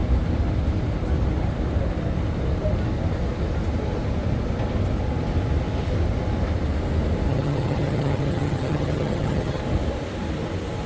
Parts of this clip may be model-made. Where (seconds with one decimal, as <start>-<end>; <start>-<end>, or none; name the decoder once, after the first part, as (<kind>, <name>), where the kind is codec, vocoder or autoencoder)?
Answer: 7.3-9.6 (vocoder, HiFi-GAN)